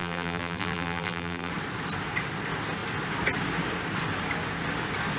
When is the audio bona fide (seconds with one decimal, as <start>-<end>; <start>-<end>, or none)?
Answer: 1.5-5.2